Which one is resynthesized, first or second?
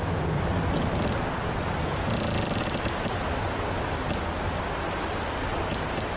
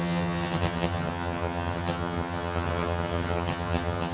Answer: second